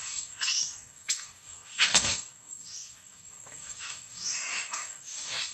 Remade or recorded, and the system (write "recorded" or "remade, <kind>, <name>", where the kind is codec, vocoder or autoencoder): remade, codec, DAC